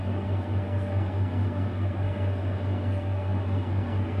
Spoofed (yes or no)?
yes